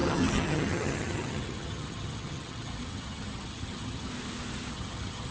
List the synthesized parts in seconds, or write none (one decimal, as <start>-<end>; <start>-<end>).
0.0-4.1; 4.7-5.3